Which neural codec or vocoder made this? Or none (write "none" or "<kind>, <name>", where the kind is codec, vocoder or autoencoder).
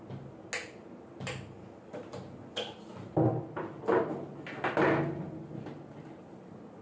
none